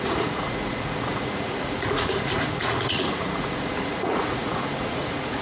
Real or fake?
fake